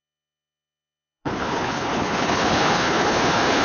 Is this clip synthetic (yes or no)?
yes